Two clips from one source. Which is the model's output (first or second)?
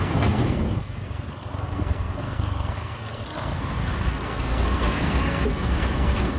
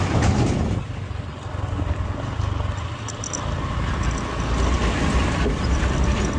first